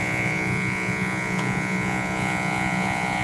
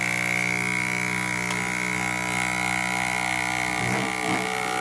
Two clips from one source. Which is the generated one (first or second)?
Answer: first